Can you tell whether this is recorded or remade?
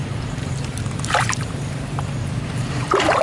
remade